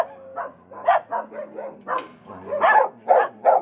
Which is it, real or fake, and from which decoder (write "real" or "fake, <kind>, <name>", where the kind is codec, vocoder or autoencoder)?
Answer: real